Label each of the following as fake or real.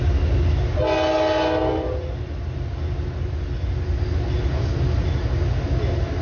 real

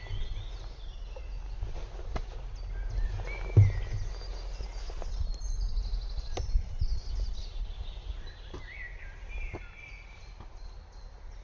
real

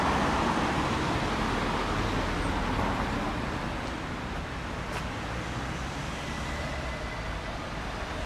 real